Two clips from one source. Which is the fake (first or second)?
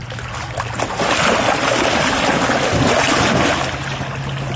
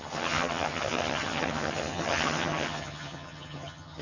second